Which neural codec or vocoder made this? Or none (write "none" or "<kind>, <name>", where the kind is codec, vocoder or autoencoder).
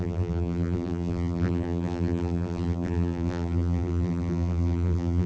vocoder, BigVGAN v2